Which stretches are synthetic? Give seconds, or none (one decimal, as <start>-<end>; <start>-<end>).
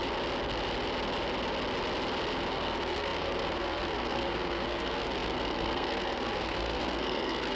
2.5-7.6